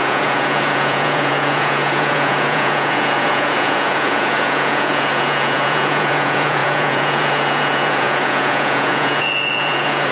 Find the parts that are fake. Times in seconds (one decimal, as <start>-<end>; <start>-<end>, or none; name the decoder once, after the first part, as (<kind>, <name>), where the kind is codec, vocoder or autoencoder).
0.0-10.1 (vocoder, Vocos)